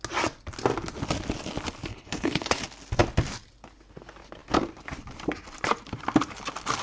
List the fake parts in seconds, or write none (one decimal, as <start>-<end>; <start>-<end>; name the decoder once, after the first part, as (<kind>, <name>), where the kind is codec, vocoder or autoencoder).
1.9-2.6 (codec, HILCodec)